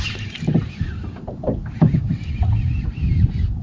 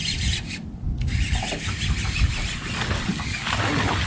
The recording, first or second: second